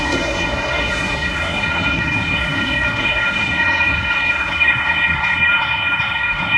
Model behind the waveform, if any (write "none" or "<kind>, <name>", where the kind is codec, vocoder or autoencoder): codec, SNAC